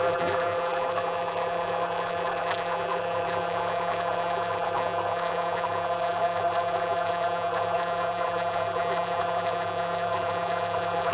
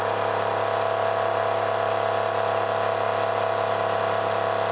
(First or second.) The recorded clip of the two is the second